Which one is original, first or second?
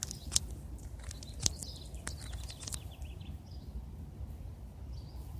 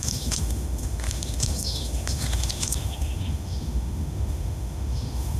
first